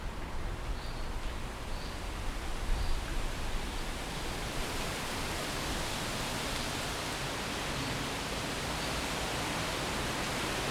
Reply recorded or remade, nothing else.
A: recorded